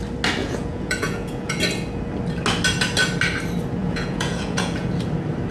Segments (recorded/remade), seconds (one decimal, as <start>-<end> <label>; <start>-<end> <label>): 0.0-0.4 recorded; 0.4-1.6 remade; 1.6-3.8 recorded; 3.8-4.9 remade; 4.9-5.5 recorded